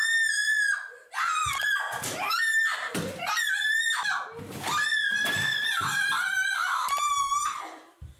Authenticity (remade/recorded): recorded